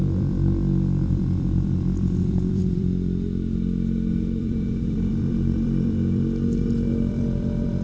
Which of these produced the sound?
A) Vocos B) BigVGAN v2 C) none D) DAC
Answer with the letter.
B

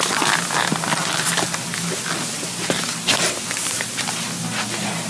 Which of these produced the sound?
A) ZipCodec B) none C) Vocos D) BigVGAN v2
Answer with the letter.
B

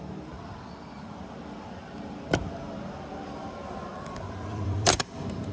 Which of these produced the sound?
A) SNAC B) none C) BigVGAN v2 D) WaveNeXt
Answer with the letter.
C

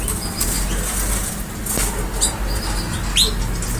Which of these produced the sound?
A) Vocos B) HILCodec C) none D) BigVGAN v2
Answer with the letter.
C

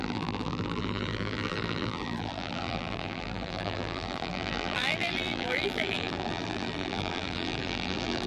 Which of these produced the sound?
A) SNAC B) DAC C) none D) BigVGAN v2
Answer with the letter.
D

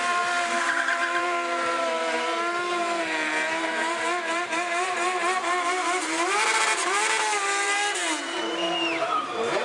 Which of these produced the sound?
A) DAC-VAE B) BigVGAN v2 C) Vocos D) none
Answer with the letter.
B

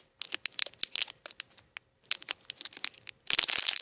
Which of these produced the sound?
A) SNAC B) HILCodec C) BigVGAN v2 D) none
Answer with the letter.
D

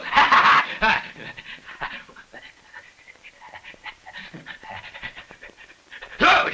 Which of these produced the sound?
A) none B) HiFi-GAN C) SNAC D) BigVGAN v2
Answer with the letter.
D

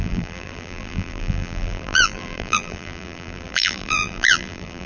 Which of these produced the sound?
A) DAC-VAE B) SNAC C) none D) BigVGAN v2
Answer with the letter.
D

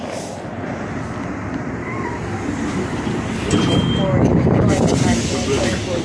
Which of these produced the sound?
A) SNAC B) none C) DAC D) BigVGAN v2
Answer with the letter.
D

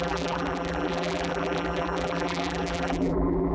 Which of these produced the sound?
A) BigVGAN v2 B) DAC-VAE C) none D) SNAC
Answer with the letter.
A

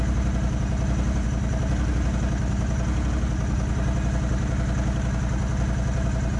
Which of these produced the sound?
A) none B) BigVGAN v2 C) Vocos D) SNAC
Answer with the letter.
A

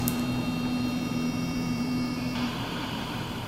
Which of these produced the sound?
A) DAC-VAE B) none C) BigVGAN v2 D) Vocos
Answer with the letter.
C